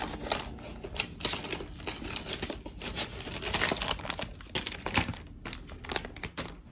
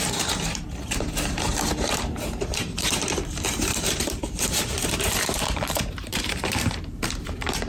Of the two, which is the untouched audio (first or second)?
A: first